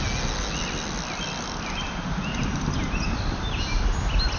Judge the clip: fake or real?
real